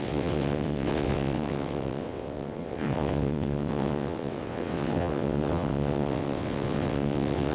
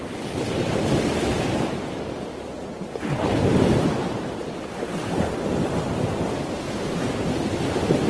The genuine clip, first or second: second